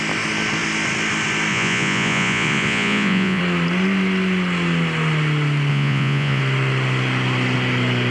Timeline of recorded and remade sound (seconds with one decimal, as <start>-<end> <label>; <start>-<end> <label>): 0.0-1.5 recorded; 1.5-3.4 remade; 3.4-5.7 recorded; 5.7-6.4 remade; 6.4-8.1 recorded